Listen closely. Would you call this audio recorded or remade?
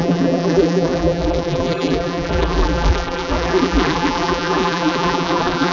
remade